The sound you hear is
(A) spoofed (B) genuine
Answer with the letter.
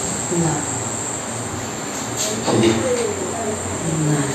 B